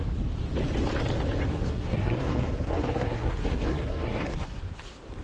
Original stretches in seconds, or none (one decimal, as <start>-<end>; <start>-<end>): 0.0-1.5; 4.6-5.2